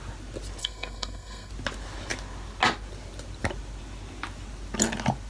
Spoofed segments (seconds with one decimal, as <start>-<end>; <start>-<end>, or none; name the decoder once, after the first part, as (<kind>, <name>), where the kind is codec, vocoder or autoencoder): 0.6-1.5 (codec, SNAC)